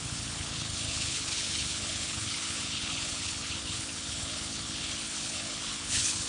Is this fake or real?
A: fake